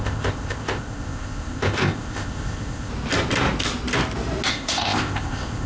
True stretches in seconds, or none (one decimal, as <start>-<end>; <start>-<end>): 2.9-4.5

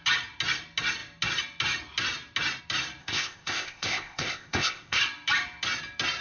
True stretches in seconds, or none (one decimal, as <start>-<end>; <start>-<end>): 0.0-3.0; 5.0-6.2